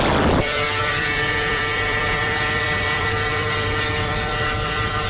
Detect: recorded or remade remade